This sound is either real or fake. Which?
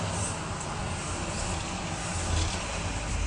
real